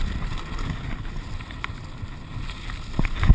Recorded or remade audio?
recorded